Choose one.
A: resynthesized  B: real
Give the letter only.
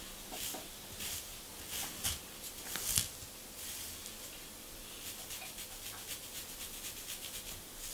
B